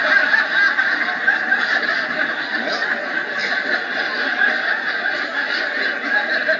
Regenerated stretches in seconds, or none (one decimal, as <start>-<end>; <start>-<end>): none